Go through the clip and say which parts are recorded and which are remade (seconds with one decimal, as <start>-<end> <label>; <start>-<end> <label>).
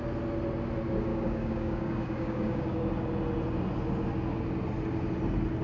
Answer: 0.0-1.1 recorded; 1.1-2.9 remade; 2.9-5.6 recorded